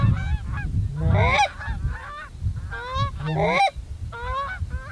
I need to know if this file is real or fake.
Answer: real